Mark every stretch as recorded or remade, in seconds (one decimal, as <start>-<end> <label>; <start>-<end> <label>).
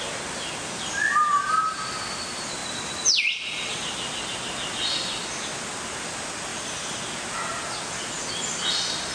0.0-9.1 recorded